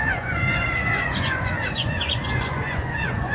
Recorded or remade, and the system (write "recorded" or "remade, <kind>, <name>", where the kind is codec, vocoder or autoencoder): remade, vocoder, Vocos